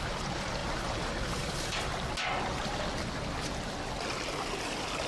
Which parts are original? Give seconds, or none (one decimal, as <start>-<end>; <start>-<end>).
1.9-5.1